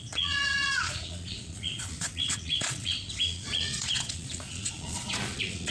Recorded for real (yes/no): no